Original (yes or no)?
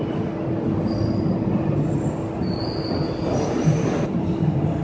yes